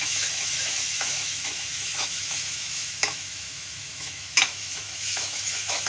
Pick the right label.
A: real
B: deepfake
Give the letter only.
B